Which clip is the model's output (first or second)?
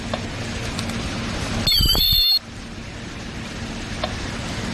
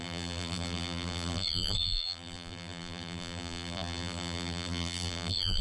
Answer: second